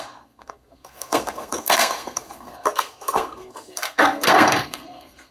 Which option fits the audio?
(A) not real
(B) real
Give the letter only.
A